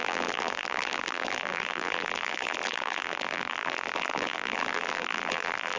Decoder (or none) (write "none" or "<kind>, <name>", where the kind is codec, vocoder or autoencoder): vocoder, BigVGAN v2